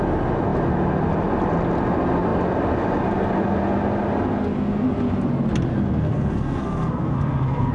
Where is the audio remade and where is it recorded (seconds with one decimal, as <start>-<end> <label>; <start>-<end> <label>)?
0.0-5.7 recorded; 5.7-7.7 remade